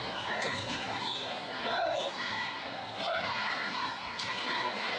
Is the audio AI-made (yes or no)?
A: yes